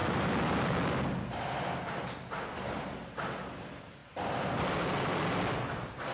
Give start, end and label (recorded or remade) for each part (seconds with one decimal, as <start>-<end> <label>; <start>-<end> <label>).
0.0-6.1 recorded